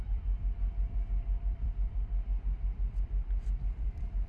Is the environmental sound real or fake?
fake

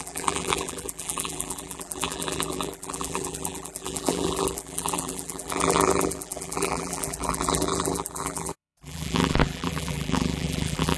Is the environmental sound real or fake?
fake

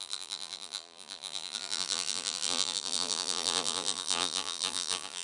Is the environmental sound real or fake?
fake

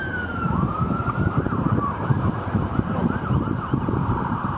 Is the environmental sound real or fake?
fake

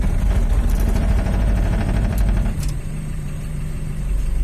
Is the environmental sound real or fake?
fake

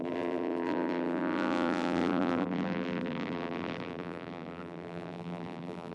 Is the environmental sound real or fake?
fake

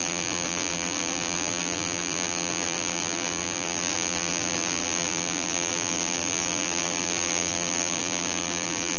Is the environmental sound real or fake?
fake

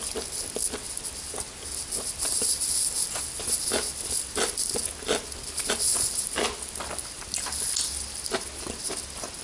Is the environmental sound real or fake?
real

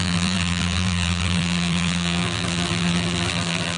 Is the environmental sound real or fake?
fake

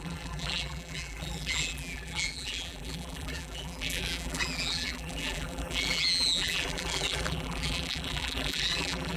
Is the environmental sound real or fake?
fake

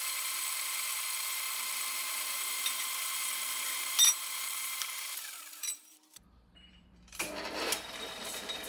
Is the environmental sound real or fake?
fake